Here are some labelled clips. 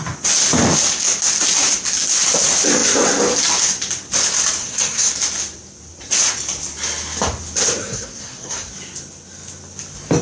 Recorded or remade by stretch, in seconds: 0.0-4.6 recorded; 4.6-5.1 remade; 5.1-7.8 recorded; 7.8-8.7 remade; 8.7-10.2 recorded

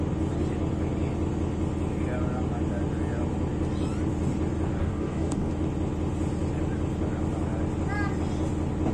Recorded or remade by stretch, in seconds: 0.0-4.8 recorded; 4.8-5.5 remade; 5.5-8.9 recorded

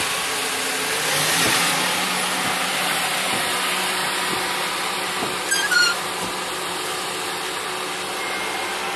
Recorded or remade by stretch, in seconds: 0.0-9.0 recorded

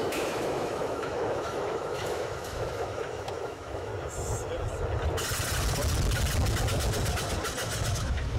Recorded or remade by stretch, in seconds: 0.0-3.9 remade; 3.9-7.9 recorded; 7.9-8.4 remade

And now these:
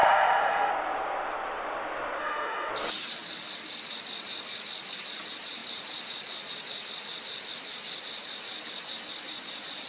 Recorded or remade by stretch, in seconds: 0.0-0.7 remade; 0.7-2.2 recorded; 2.2-2.7 remade; 2.7-9.9 recorded

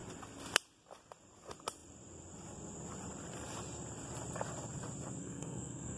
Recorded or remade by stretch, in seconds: 0.0-5.2 recorded; 5.2-6.0 remade

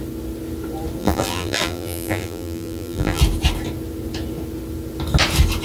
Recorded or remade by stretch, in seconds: 0.0-1.0 recorded; 1.0-3.2 remade; 3.2-5.6 recorded

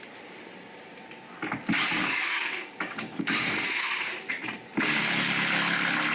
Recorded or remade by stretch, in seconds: 0.0-2.0 recorded; 2.0-4.3 remade; 4.3-6.1 recorded